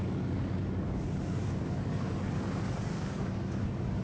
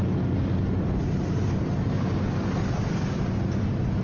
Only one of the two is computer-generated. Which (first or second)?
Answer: first